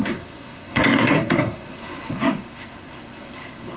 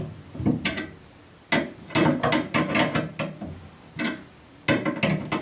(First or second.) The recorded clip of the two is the second